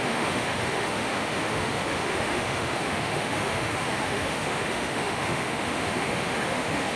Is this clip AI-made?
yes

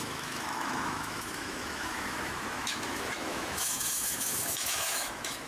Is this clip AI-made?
yes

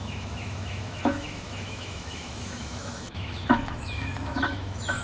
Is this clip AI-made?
yes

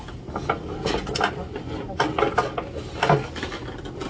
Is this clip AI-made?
no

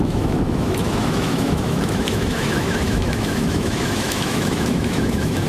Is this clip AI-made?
yes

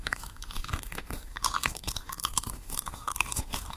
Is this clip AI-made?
yes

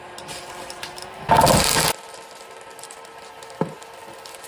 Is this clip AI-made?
no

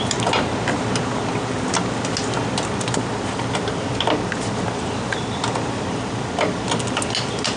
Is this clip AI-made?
no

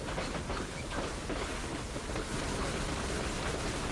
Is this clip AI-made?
no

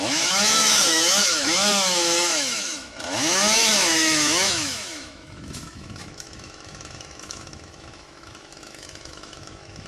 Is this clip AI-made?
yes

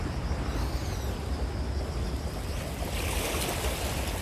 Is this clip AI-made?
no